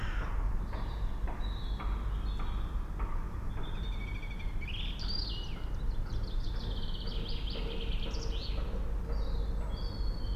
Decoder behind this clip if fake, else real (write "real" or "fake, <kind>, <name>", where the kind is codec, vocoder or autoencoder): real